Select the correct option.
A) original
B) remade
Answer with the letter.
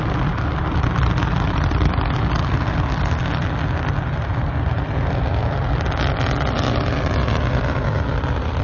A